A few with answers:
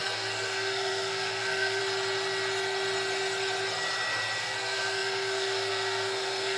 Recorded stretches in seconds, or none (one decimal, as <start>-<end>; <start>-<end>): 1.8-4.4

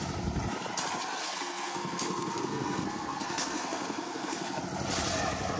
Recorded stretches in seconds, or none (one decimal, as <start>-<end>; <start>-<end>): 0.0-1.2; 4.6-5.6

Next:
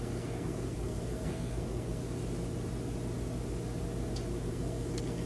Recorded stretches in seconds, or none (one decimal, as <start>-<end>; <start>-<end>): 2.0-4.5